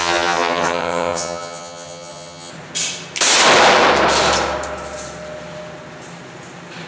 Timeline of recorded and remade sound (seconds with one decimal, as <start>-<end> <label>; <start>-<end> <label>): 0.0-2.5 remade; 2.5-6.9 recorded